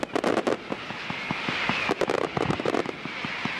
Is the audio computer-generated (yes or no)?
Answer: no